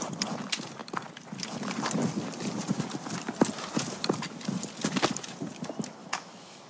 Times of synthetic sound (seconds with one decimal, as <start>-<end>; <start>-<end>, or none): 6.0-6.7